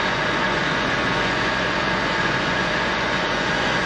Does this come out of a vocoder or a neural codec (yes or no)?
yes